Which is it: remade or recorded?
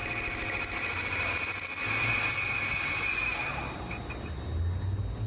recorded